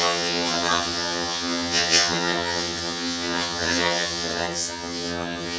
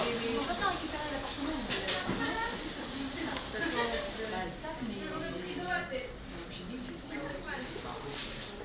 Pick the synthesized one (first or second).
first